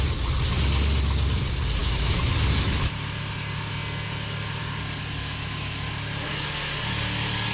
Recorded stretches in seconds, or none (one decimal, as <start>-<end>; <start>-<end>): 0.0-1.8; 2.9-5.2; 5.9-7.5